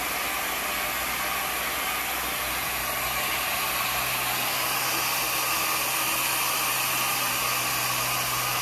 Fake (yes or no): no